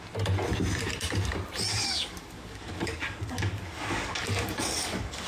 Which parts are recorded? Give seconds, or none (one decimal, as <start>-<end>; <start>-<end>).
0.0-1.7